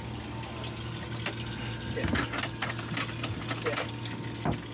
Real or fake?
real